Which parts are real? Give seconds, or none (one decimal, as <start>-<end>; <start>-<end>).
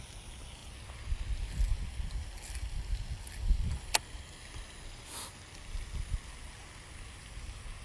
0.0-7.8